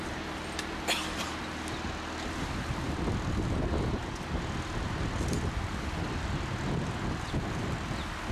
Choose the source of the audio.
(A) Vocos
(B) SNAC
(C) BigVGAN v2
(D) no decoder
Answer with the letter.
D